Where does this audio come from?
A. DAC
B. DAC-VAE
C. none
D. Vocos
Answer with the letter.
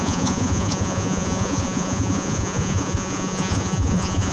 D